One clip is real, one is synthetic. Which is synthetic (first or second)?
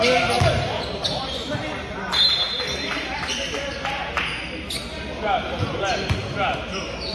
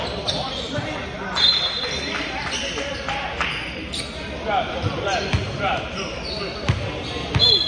second